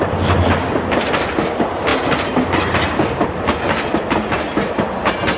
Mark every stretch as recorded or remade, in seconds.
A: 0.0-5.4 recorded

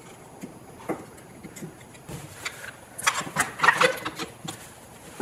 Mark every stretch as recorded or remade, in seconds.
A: 0.0-5.2 recorded